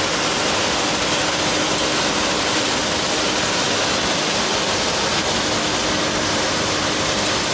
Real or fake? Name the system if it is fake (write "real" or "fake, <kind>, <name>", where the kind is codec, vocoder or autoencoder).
real